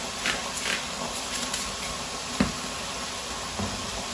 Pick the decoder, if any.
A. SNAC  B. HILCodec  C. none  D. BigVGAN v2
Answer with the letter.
C